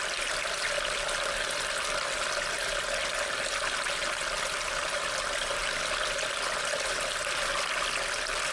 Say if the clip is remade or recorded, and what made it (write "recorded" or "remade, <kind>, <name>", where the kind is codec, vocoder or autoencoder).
recorded